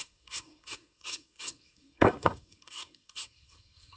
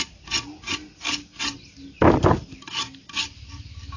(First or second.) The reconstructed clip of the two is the first